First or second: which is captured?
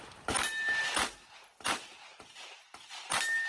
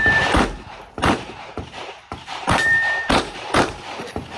first